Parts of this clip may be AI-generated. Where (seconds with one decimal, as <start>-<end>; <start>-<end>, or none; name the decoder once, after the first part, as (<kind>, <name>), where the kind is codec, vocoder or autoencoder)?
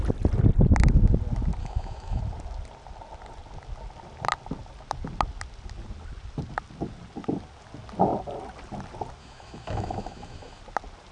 1.6-2.2 (autoencoder, DAC-VAE); 9.2-10.6